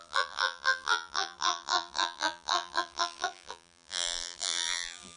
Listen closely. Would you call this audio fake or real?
fake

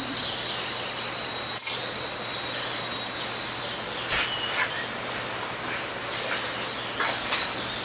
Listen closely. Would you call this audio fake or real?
real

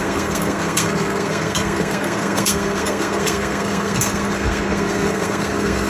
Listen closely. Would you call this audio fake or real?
fake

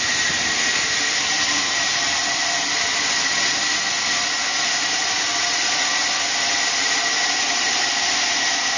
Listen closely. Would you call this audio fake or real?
real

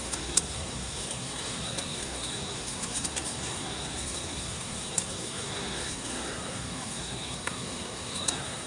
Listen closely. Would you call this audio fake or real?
fake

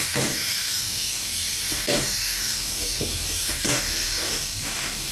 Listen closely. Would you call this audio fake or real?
fake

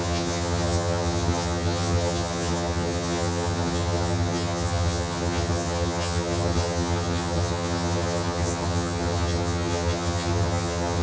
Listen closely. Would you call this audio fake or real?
fake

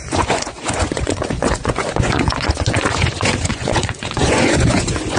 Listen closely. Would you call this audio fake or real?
fake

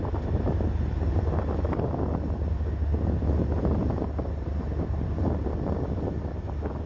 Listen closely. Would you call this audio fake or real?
real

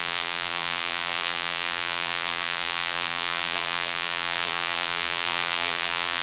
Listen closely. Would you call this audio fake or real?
fake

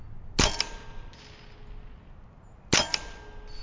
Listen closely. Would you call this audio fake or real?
real